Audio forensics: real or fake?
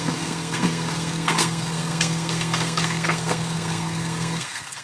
fake